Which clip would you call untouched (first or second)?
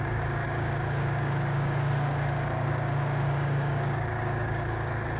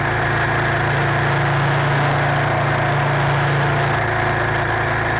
second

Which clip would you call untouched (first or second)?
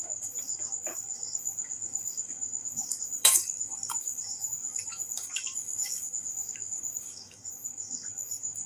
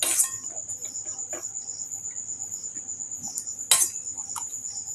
second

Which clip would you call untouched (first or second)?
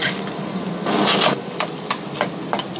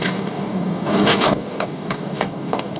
first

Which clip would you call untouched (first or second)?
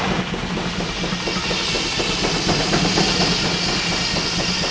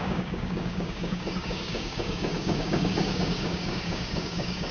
first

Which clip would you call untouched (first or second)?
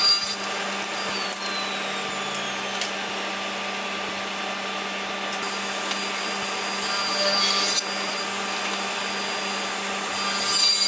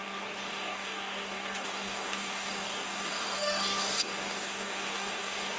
first